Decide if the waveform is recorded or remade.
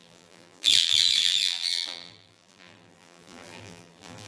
remade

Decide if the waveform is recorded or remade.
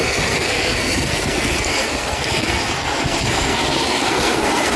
remade